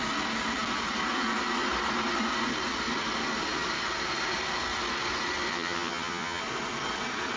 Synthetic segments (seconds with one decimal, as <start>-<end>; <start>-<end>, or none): 5.5-6.4